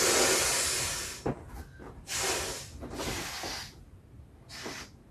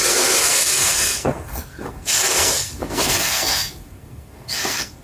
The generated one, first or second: second